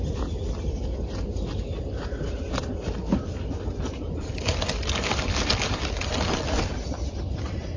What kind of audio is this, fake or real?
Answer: real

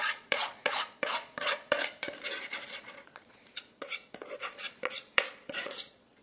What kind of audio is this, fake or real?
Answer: fake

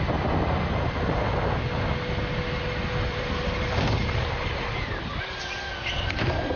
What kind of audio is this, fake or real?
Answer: real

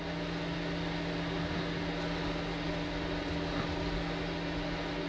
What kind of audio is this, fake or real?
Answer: real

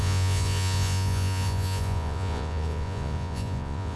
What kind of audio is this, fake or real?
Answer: fake